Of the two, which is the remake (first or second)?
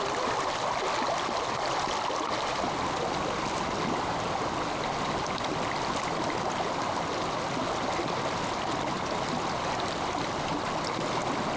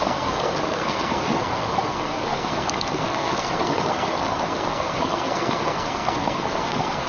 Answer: second